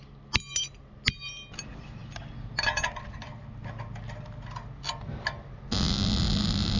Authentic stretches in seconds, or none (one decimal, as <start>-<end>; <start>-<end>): 0.0-6.8